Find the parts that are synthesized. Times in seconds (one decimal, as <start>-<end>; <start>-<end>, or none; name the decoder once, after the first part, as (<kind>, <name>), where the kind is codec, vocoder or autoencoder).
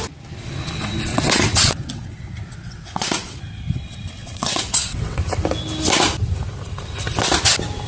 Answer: 1.1-3.4 (vocoder, WaveNeXt); 4.2-5.2